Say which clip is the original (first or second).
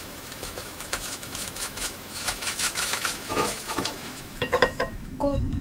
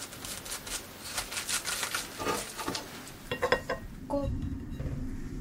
second